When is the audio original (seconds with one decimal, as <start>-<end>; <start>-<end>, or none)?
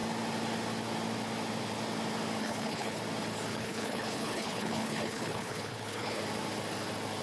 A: 0.0-2.4; 3.0-3.5; 6.2-7.2